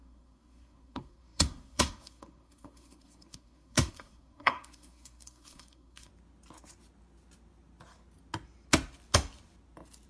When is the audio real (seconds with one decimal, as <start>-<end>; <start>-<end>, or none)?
6.1-10.1